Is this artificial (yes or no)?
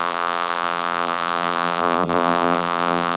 yes